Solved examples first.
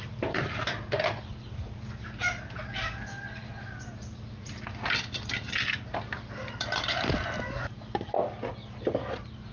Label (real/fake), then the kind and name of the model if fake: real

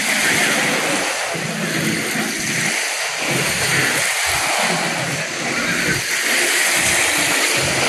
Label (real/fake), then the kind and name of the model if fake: real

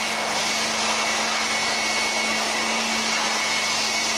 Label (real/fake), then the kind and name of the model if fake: real